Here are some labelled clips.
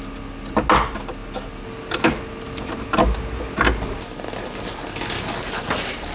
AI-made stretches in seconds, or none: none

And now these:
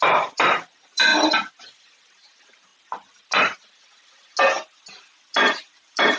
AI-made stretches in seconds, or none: 0.0-1.1 (vocoder, BigVGAN v2); 1.6-2.7; 4.9-6.2

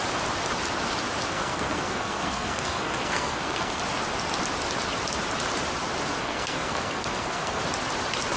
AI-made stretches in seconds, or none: 1.3-3.8 (codec, SNAC); 6.2-7.6